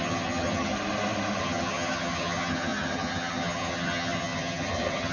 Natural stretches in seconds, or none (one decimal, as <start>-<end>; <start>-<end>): 0.7-1.4